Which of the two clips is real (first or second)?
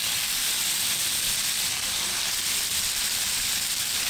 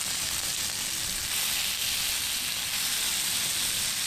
second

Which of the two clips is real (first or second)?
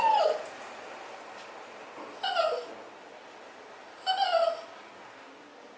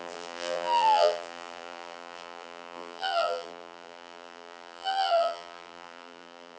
first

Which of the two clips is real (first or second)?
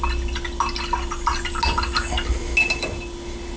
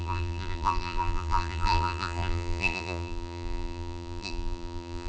first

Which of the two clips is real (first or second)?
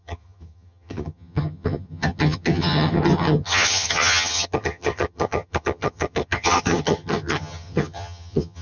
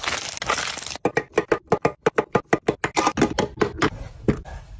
second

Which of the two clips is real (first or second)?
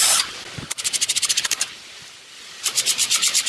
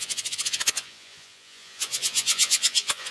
first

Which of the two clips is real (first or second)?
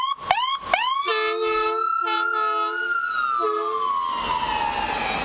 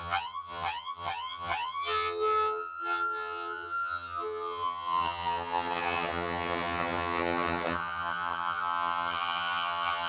first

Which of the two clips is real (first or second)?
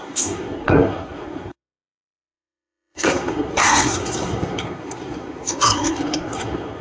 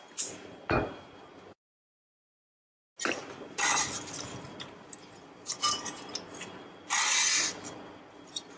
second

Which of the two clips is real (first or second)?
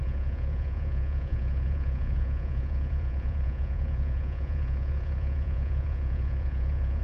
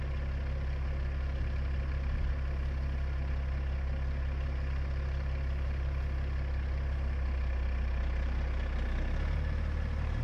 second